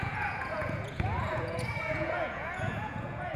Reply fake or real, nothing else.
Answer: fake